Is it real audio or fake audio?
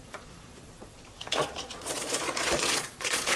fake